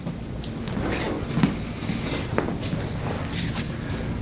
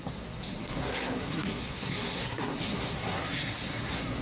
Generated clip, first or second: second